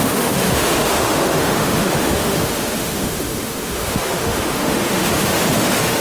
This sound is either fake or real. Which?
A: fake